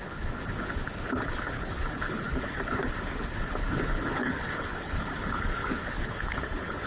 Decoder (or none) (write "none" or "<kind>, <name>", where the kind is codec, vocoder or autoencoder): codec, HILCodec